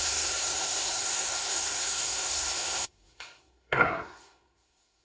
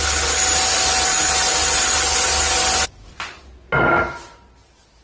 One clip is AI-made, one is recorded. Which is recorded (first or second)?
second